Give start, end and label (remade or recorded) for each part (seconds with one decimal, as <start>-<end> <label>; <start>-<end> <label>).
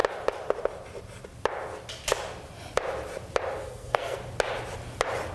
0.0-3.6 recorded; 3.6-4.2 remade; 4.2-5.3 recorded